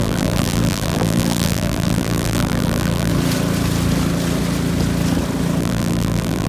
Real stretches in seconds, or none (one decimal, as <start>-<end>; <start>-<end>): 3.1-5.6